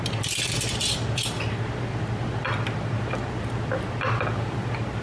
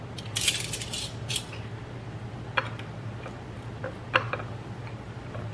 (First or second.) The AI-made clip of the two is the second